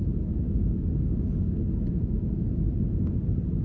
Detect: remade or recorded recorded